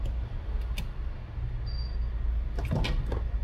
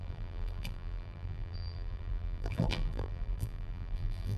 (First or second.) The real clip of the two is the first